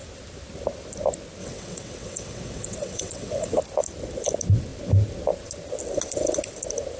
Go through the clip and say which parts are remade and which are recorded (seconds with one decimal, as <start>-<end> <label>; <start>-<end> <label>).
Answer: 0.0-1.4 recorded; 1.4-3.6 remade; 3.6-7.0 recorded